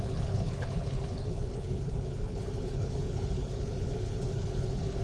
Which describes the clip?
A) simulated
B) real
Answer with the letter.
A